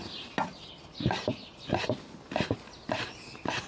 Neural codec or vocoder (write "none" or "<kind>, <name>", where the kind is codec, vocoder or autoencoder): none